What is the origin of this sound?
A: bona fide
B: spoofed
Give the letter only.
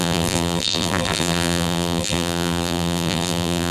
B